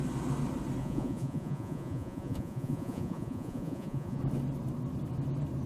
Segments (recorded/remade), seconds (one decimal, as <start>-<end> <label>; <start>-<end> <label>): 0.0-0.8 recorded; 0.8-4.2 remade; 4.2-5.7 recorded